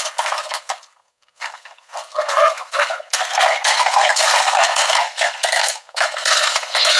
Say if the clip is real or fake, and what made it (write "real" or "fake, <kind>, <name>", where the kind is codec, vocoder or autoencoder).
fake, codec, SNAC